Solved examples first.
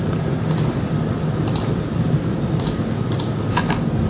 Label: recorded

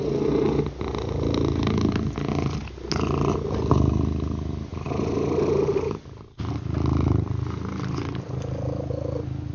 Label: recorded